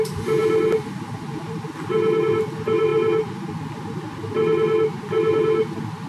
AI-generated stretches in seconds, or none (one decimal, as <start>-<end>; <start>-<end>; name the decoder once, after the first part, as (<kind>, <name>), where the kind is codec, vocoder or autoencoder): none